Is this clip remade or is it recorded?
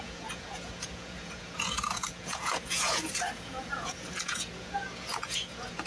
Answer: remade